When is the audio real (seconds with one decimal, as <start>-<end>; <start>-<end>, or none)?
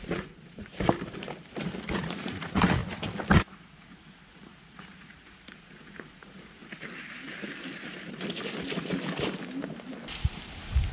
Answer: 0.7-1.9; 2.8-3.4; 6.6-10.9